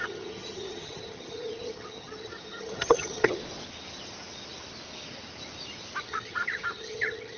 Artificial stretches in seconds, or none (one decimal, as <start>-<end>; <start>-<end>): 0.0-3.4; 6.0-7.4